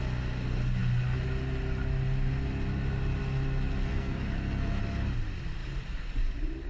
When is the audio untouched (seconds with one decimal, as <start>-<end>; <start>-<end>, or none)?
0.0-3.9; 4.8-6.7

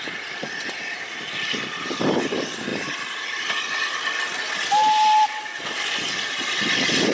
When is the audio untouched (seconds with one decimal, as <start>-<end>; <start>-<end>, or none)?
0.0-7.1

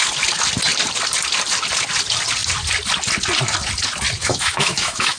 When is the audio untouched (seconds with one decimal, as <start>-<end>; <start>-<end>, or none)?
0.0-4.2